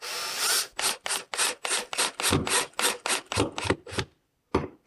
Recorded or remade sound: recorded